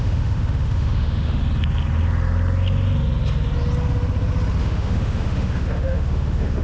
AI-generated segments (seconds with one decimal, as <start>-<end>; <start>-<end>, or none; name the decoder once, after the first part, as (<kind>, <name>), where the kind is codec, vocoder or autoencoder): 0.0-1.4 (autoencoder, DAC-VAE); 4.6-6.6